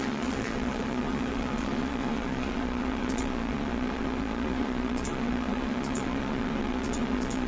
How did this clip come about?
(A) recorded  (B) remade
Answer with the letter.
B